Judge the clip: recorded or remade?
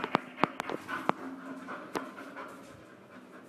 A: recorded